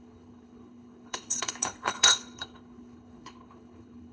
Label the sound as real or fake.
fake